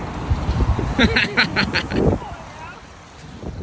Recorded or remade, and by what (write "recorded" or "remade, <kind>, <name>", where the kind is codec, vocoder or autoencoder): recorded